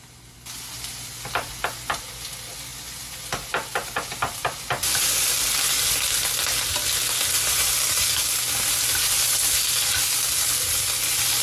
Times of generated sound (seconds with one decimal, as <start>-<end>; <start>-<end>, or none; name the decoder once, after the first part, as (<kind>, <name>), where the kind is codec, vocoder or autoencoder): none